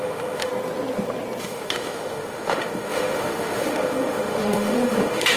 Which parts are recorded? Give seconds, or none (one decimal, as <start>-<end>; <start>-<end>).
0.5-1.4